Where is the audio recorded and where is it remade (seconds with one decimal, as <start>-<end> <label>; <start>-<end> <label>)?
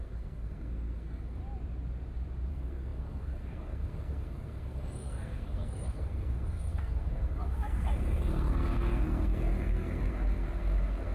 0.0-1.4 remade; 1.4-2.5 recorded; 2.5-11.1 remade